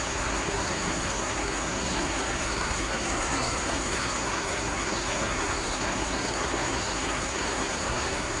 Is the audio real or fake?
fake